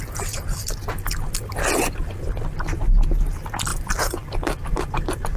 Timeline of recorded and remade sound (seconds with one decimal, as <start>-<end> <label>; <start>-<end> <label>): 0.0-3.7 recorded; 3.7-5.4 remade